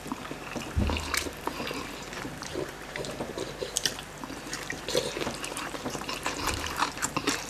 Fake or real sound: fake